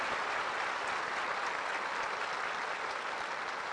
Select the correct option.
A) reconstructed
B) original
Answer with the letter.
B